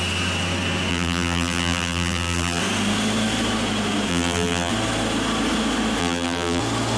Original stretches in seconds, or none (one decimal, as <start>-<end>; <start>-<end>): 0.0-0.9; 2.6-4.1; 4.7-6.0; 6.6-7.0